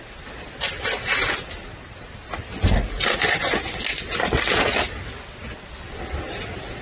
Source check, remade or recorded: recorded